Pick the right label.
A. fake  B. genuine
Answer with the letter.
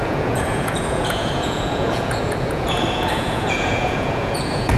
A